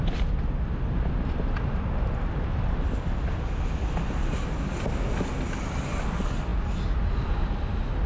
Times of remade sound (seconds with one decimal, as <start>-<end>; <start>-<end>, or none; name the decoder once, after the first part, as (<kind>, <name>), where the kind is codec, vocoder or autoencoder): none